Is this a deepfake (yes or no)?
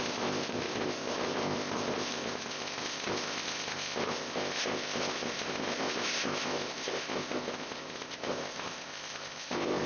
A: yes